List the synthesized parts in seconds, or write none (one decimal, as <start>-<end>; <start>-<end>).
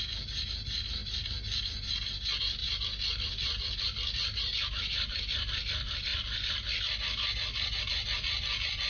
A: none